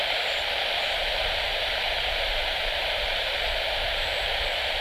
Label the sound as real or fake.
fake